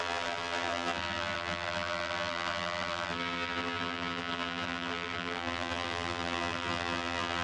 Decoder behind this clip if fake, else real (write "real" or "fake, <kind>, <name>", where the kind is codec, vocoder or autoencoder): fake, vocoder, BigVGAN v2